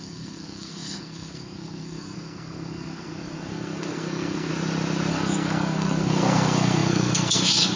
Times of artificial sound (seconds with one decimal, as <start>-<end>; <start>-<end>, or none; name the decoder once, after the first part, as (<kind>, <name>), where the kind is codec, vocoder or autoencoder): 0.0-4.5 (codec, SNAC); 5.1-7.8